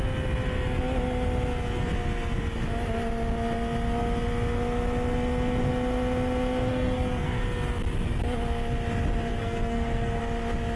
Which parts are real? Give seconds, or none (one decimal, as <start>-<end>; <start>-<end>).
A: 0.0-6.7; 7.4-9.3; 10.2-10.8